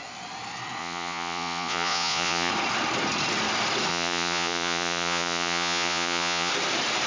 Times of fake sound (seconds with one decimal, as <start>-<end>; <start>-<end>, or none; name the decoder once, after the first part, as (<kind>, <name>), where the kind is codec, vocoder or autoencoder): 0.8-2.5 (vocoder, Vocos); 3.9-6.5